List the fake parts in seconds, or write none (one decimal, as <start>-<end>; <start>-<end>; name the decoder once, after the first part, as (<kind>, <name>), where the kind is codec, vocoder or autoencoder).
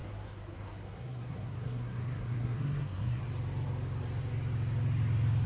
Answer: 0.0-3.2 (codec, SNAC)